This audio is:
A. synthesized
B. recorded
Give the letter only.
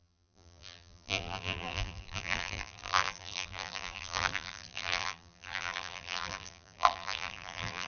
A